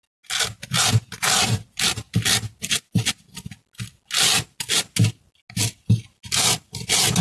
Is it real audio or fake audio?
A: real